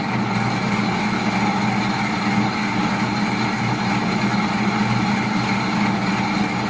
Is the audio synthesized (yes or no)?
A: no